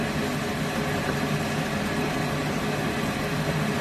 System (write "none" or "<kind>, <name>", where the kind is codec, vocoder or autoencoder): none